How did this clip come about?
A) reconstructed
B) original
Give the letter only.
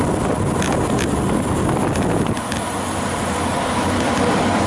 B